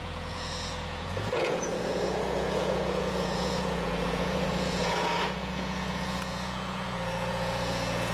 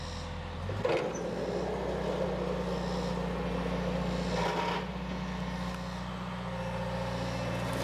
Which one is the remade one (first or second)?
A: first